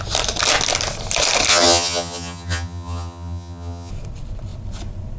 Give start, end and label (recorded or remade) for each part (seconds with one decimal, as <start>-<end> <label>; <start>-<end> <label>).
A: 0.0-1.5 recorded; 1.5-3.9 remade; 3.9-5.2 recorded